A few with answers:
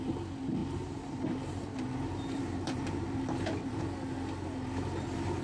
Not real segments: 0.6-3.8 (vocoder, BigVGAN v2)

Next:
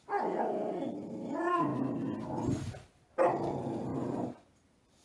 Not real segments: 3.9-5.0 (vocoder, BigVGAN v2)